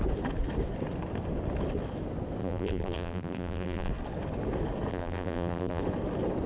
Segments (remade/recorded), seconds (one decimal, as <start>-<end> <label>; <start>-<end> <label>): 0.0-2.4 recorded; 2.4-3.9 remade; 3.9-4.9 recorded; 4.9-5.8 remade; 5.8-6.5 recorded